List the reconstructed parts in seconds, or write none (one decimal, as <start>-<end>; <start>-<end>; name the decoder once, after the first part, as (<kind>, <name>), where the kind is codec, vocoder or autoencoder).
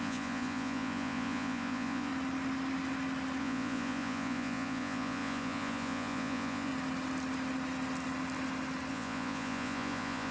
0.0-2.1 (vocoder, Vocos); 3.4-6.7; 8.9-10.3